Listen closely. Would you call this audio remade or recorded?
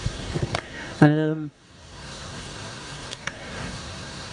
remade